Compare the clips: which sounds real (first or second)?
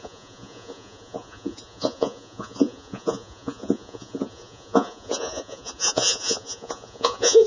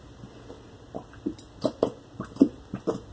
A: second